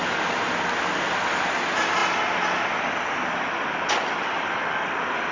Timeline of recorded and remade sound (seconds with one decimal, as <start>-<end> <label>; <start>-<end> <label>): 0.0-5.3 recorded